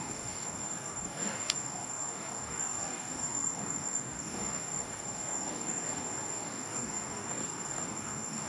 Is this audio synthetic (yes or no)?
yes